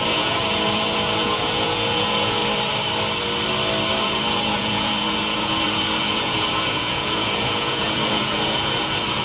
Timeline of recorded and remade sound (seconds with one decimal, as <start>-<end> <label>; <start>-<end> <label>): 0.0-2.4 remade; 2.4-4.0 recorded; 4.0-9.2 remade

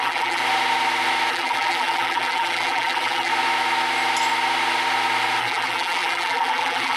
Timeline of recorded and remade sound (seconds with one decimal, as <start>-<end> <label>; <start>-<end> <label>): 0.0-0.4 remade; 0.4-1.3 recorded; 1.3-3.3 remade; 3.3-5.4 recorded; 5.4-7.0 remade

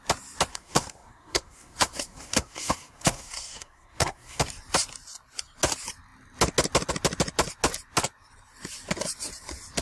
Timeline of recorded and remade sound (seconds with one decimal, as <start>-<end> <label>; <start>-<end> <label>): 0.0-0.5 recorded; 0.5-4.4 remade; 4.4-9.8 recorded

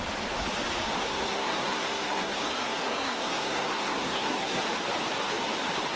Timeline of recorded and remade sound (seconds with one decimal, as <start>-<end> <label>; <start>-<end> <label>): 0.0-1.0 recorded; 1.0-4.6 remade; 4.6-6.0 recorded

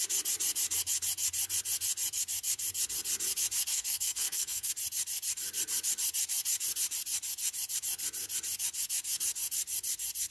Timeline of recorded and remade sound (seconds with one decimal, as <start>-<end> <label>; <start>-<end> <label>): 0.0-3.7 recorded; 3.7-4.7 remade; 4.7-10.3 recorded